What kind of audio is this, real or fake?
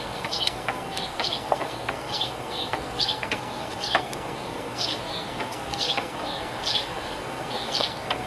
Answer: fake